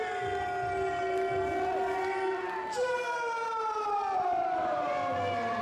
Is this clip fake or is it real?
real